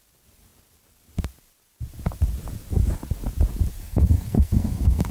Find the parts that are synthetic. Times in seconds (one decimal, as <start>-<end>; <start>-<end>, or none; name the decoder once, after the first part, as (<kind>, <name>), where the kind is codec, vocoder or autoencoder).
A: 3.8-5.1 (codec, SNAC)